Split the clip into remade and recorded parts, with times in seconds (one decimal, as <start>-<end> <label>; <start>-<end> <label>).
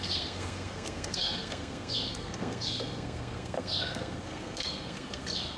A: 0.0-5.6 remade